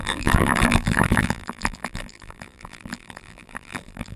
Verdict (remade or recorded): remade